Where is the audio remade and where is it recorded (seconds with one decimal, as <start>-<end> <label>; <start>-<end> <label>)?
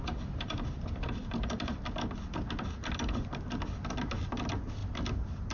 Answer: 0.0-5.5 recorded